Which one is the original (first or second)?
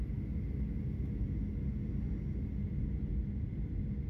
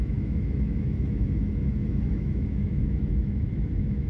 first